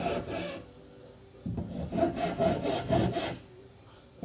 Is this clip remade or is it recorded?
recorded